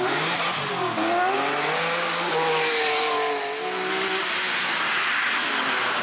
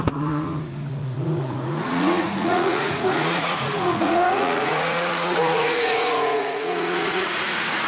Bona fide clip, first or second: first